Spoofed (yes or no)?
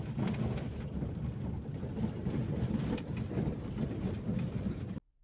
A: no